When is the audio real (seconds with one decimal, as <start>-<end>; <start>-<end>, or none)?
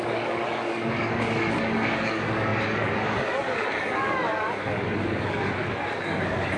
none